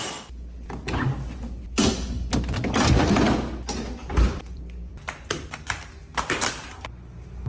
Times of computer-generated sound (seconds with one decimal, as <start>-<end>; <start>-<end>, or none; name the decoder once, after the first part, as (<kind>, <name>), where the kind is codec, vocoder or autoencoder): 4.0-5.3 (vocoder, BigVGAN v2)